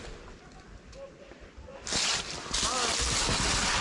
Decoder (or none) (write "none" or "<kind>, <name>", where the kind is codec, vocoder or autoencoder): none